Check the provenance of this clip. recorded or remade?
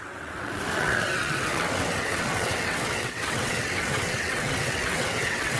remade